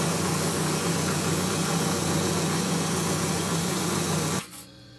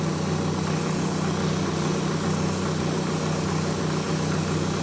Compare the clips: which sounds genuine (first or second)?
second